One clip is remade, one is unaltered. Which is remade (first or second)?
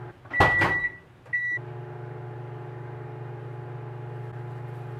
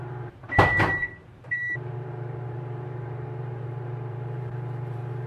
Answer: second